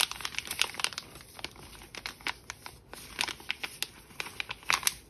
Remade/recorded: recorded